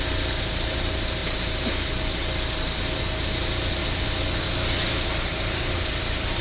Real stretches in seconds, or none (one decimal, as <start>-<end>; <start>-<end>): 0.0-6.4